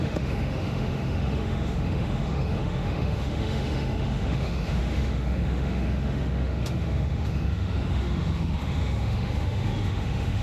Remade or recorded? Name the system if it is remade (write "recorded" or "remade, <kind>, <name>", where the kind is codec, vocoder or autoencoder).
remade, autoencoder, DAC-VAE